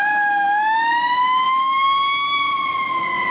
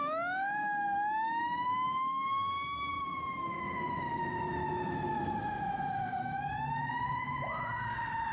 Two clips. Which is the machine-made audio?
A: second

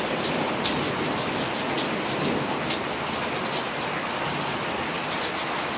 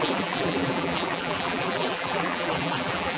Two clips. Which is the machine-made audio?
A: second